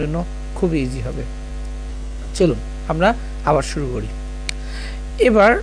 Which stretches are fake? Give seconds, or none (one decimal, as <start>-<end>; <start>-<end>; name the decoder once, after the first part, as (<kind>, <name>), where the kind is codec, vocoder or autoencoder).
1.9-2.5 (codec, HILCodec)